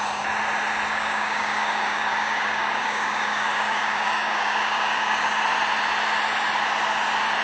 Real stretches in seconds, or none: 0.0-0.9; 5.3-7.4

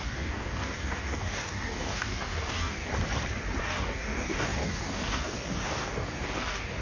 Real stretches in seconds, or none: 2.9-3.6

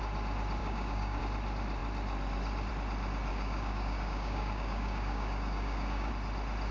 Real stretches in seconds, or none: 0.0-0.6; 1.2-3.3; 6.1-6.7